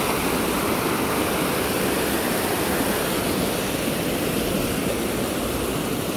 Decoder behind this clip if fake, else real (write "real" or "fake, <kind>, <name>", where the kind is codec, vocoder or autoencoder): real